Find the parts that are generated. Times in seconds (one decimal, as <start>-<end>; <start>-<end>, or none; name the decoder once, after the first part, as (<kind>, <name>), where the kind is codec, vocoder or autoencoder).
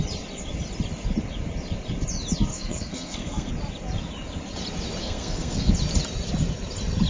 2.5-3.5 (codec, SNAC); 5.0-5.7